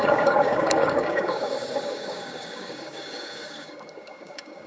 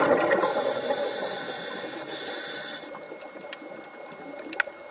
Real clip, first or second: second